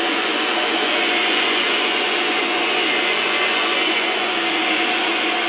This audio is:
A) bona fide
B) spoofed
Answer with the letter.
B